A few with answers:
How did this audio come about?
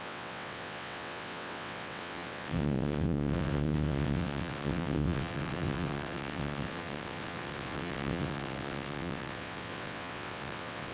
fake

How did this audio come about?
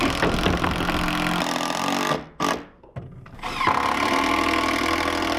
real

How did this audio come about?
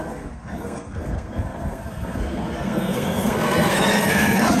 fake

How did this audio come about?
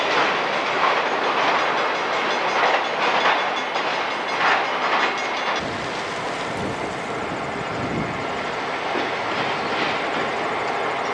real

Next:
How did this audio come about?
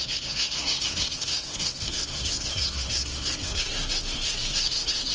fake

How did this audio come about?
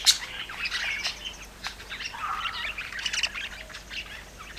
real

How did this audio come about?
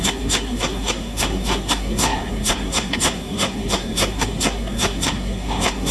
fake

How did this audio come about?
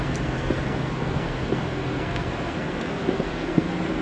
fake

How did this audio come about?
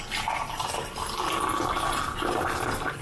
real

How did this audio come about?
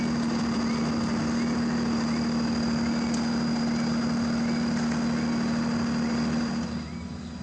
real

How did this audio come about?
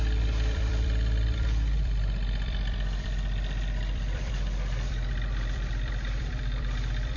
fake